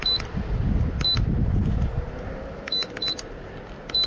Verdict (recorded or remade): recorded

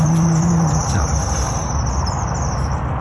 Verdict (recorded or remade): remade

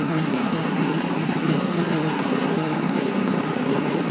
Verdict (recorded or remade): remade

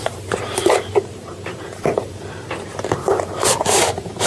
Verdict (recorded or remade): remade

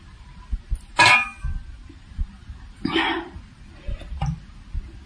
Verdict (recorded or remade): recorded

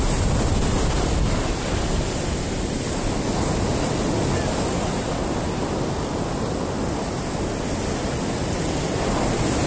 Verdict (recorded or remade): recorded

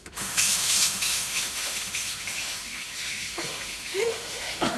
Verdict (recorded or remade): remade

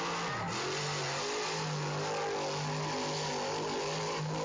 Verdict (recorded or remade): recorded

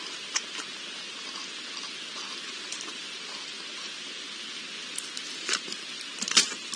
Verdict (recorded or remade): recorded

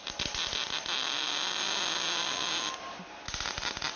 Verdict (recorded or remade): recorded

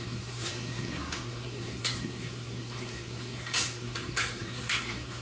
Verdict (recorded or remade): remade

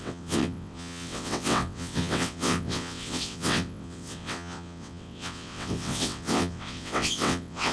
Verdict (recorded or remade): remade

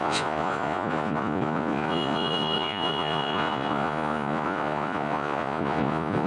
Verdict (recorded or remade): remade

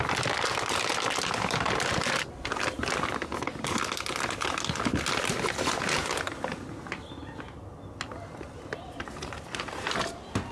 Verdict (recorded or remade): recorded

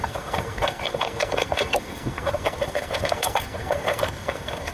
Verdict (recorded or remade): remade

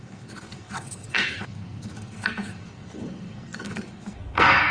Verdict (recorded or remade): remade